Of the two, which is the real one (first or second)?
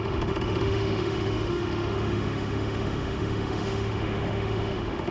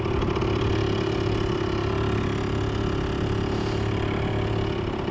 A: second